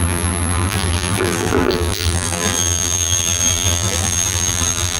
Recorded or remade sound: remade